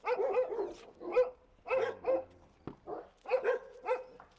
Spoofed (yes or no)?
no